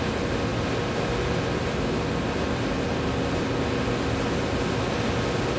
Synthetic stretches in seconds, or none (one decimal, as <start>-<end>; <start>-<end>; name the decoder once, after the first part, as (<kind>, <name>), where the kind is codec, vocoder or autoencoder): none